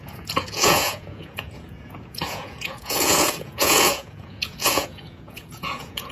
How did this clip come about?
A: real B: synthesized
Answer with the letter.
B